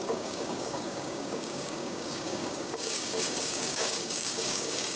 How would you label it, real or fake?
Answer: fake